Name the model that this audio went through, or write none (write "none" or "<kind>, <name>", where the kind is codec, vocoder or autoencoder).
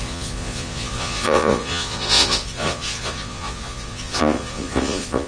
vocoder, Vocos